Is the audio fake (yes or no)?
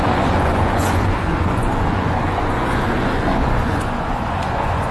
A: yes